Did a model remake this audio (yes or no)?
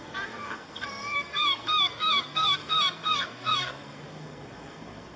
yes